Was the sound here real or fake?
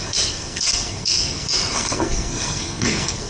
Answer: fake